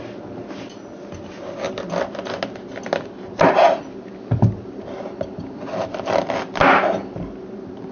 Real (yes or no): yes